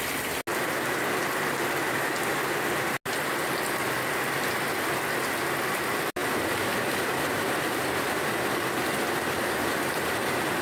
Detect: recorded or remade recorded